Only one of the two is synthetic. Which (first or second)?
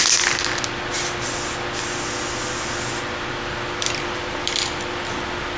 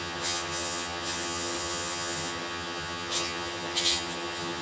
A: second